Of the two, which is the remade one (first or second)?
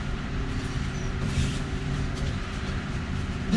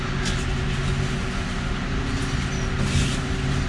first